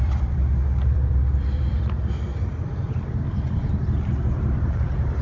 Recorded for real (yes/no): no